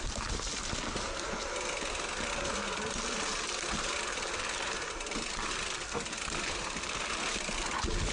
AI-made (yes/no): no